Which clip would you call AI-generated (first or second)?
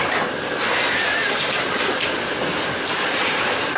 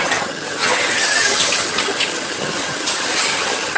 second